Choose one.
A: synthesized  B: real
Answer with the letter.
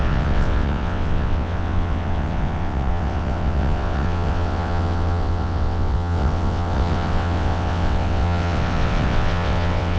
A